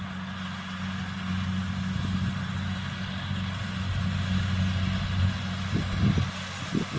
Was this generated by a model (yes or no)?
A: no